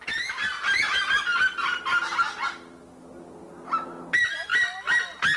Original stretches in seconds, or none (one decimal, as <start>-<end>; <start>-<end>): 0.0-5.4